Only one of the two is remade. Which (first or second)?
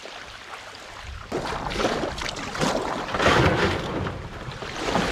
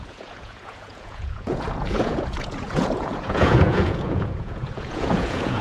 second